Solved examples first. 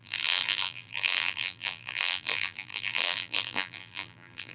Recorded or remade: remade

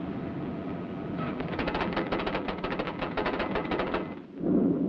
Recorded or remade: remade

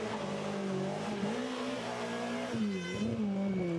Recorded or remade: recorded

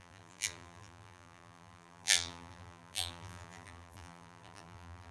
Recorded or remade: remade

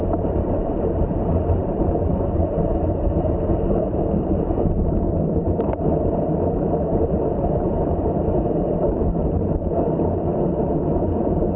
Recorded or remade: remade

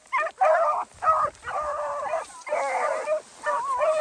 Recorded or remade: recorded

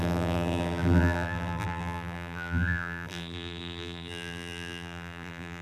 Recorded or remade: remade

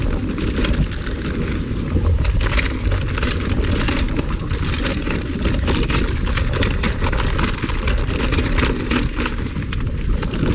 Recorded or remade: recorded